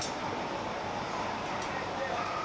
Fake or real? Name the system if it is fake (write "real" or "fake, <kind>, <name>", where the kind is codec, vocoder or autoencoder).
real